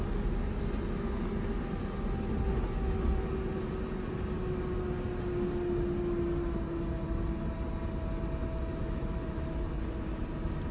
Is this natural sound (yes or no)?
yes